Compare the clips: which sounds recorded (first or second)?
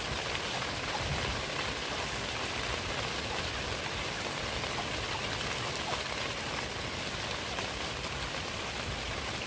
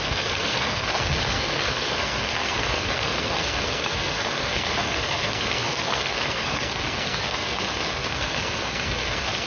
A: first